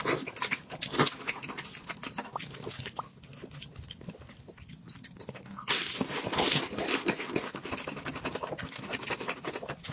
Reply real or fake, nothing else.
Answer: real